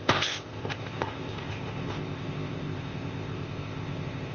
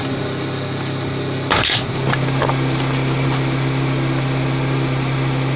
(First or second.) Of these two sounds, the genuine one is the second